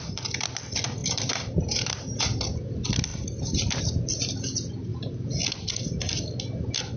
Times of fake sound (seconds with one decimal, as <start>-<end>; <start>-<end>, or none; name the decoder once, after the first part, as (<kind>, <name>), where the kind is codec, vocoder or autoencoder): 1.0-2.4 (vocoder, BigVGAN v2)

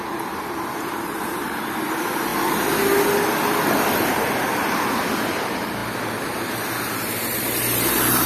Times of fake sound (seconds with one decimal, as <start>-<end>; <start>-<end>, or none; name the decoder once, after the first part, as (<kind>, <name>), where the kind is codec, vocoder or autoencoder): 0.0-2.3 (vocoder, BigVGAN v2); 5.2-8.3